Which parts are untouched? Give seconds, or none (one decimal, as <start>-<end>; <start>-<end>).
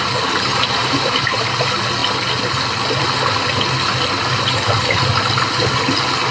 0.0-0.5; 1.6-6.3